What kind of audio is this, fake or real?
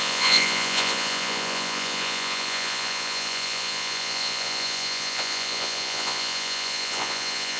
fake